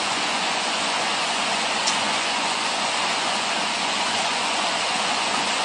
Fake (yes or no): yes